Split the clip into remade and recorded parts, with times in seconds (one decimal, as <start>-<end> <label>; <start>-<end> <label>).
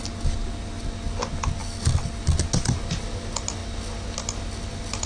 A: 0.0-5.1 recorded